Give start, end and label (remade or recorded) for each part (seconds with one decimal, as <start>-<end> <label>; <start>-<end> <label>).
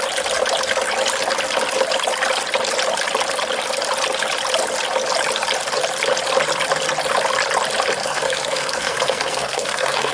0.0-8.0 recorded; 8.0-10.1 remade